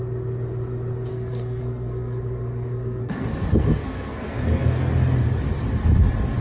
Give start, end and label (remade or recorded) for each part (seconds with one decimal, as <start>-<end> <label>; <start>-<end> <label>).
0.0-1.1 recorded; 1.1-4.9 remade; 4.9-6.4 recorded